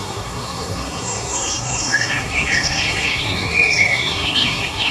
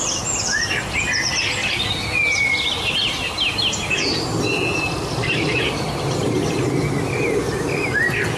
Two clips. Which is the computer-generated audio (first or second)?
first